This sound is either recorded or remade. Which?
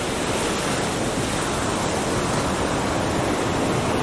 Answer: recorded